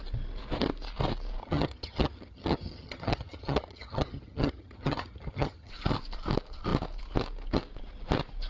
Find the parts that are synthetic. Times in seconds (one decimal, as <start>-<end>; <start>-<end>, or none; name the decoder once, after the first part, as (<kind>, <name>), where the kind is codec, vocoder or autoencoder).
1.4-5.7 (vocoder, HiFi-GAN)